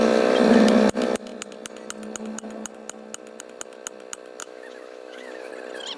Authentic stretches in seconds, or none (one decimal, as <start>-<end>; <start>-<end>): 0.0-4.4; 5.5-6.0